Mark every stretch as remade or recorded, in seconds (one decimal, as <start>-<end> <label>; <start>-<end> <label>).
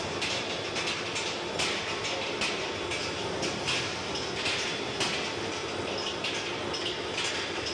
0.0-7.7 recorded